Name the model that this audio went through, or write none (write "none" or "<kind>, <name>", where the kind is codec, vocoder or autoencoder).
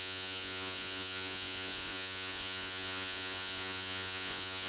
vocoder, Vocos